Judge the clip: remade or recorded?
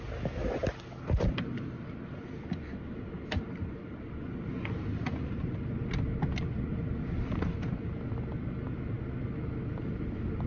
recorded